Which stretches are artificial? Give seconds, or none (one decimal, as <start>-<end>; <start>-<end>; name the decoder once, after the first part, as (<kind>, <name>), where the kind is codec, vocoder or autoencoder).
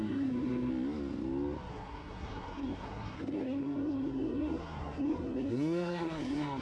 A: 0.0-0.7 (codec, SNAC); 1.7-6.6